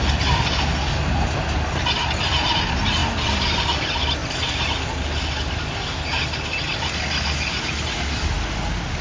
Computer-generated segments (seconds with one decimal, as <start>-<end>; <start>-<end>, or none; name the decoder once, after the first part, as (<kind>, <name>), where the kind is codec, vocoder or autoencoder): none